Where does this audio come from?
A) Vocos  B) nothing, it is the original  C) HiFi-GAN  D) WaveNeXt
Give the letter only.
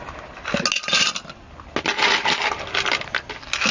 B